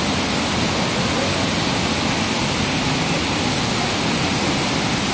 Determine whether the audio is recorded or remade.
recorded